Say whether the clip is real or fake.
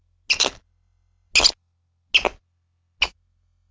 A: real